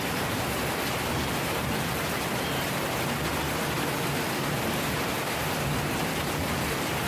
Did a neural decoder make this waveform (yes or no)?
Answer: no